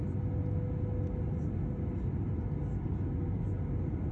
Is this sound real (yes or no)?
yes